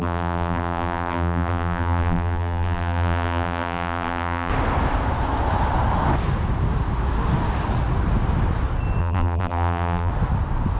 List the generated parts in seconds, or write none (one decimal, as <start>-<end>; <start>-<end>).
0.0-4.5; 9.0-10.1